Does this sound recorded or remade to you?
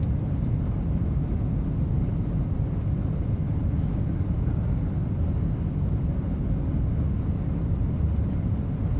recorded